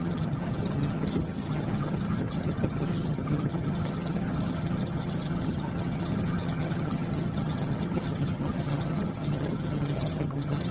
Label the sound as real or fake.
fake